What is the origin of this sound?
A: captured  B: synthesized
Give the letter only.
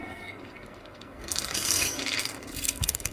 B